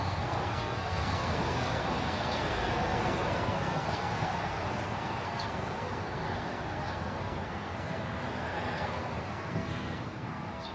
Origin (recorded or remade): remade